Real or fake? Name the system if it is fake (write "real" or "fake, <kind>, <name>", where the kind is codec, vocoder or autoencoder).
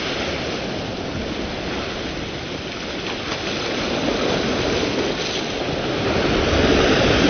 real